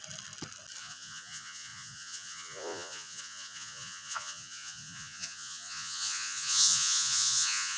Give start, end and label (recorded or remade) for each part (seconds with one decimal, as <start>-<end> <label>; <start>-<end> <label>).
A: 0.0-0.8 recorded; 0.8-7.8 remade